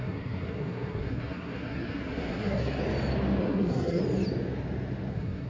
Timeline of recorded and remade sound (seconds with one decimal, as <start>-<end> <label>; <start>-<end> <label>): 0.0-2.8 remade; 2.8-3.4 recorded; 3.4-4.0 remade; 4.0-5.1 recorded; 5.1-5.5 remade